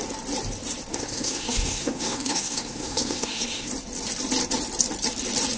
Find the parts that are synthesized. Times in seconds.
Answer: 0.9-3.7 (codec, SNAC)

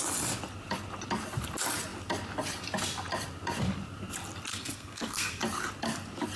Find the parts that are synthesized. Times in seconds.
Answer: 4.5-5.4 (codec, SNAC)

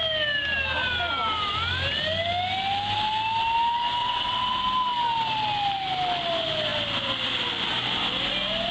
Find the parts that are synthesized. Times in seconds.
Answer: 4.0-4.6 (vocoder, WaveNeXt)

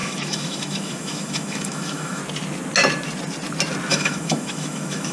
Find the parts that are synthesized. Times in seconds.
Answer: 0.0-2.2 (autoencoder, DAC-VAE); 3.9-5.1

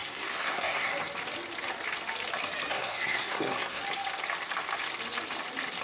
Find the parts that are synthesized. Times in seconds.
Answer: 0.0-0.9 (codec, SNAC); 2.7-3.8

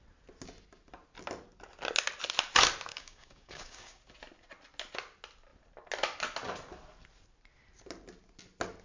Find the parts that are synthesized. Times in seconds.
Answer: 2.9-4.0 (codec, DAC)

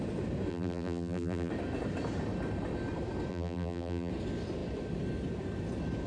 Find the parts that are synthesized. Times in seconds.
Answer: 0.5-1.5 (vocoder, BigVGAN v2); 3.3-4.1